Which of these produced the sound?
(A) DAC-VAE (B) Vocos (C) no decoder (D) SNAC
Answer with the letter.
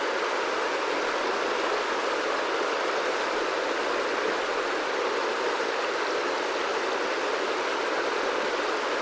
C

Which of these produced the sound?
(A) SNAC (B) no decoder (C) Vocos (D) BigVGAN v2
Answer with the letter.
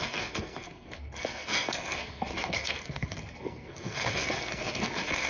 A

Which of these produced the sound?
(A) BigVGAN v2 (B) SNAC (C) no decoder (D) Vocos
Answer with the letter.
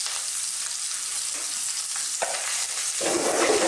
C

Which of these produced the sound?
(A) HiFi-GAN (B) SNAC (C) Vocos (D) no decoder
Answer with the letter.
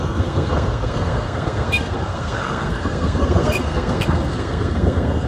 B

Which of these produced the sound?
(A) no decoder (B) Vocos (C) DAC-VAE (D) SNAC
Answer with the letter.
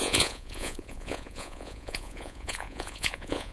B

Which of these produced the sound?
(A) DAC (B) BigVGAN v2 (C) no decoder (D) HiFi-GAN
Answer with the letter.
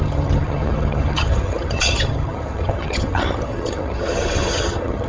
D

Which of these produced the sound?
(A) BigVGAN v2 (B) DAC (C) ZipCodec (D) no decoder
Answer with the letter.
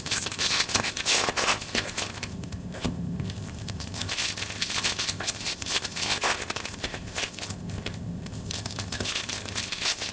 C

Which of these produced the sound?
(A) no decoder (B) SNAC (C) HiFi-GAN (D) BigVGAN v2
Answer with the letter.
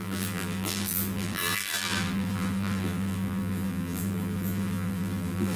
D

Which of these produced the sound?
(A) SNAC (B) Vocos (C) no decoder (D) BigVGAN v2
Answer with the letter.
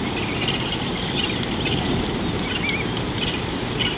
C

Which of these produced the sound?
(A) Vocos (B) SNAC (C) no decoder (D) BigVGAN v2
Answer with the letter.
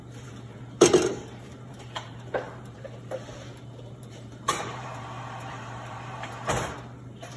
D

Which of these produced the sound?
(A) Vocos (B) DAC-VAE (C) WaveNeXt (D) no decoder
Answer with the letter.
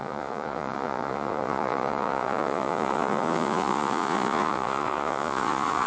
A